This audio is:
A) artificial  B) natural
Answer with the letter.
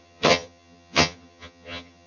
A